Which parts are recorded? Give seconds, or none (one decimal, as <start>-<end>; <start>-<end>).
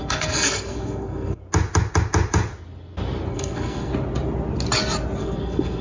1.4-3.3; 3.9-5.2